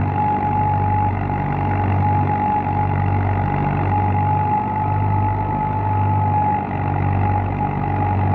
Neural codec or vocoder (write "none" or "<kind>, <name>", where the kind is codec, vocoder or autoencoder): none